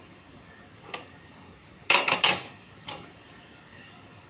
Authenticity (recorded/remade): remade